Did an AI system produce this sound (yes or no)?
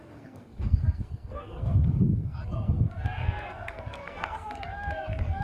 yes